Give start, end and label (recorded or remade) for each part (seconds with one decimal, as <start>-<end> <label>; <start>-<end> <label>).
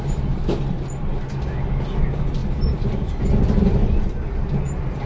0.0-5.1 recorded